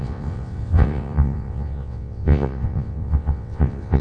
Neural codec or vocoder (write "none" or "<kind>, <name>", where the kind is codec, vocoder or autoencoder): vocoder, WaveNeXt